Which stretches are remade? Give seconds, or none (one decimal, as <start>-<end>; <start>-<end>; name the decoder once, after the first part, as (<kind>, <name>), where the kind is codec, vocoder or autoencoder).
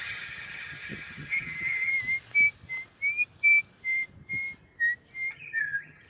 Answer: 0.0-1.9 (vocoder, HiFi-GAN); 5.3-6.1